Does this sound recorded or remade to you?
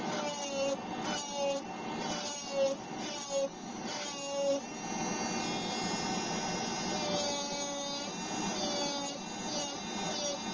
recorded